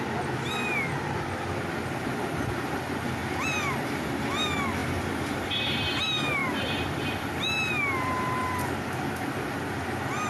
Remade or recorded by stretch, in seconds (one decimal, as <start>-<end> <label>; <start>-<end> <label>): 0.0-4.8 recorded; 4.8-5.8 remade; 5.8-6.4 recorded; 6.4-7.4 remade; 7.4-10.3 recorded